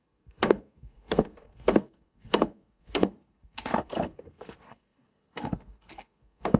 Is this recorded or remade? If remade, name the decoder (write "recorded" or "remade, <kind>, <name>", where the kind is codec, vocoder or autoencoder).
remade, codec, SNAC